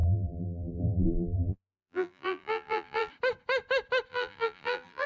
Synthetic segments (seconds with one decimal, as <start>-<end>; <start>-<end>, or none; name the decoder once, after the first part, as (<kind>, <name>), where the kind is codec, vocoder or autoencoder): 0.0-3.1 (vocoder, BigVGAN v2); 4.1-5.1